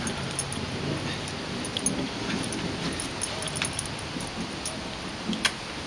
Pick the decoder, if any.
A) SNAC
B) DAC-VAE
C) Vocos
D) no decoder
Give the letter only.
D